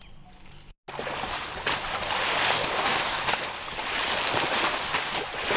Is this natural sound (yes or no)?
yes